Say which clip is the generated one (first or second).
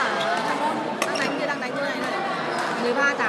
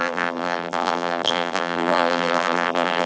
second